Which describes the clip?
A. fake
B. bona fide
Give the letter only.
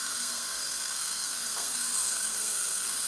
A